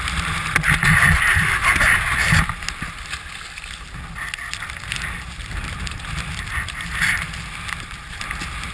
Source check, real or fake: real